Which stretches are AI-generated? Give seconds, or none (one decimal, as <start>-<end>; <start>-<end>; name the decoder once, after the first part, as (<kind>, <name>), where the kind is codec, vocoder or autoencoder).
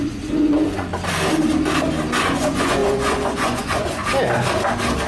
0.0-0.9 (vocoder, Vocos); 2.2-4.0